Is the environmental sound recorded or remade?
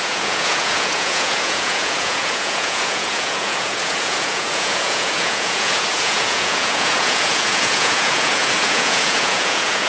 remade